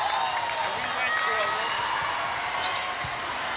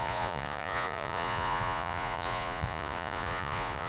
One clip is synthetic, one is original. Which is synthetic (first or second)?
second